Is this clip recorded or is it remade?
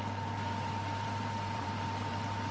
remade